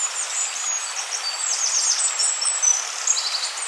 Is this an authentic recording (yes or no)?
yes